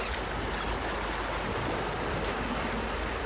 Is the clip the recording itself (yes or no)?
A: yes